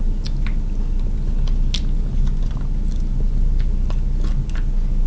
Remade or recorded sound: recorded